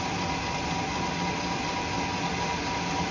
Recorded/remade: recorded